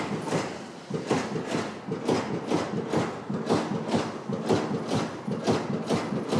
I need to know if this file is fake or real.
real